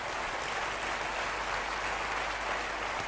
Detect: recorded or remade recorded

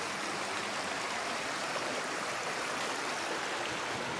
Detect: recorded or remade recorded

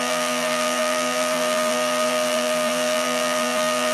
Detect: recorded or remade remade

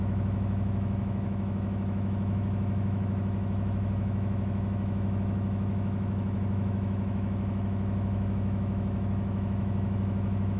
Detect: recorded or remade remade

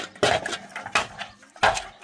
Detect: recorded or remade recorded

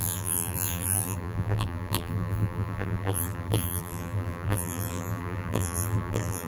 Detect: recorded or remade remade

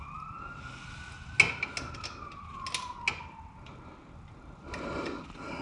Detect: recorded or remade recorded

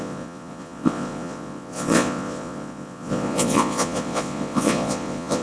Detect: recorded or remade remade